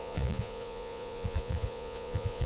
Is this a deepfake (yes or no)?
yes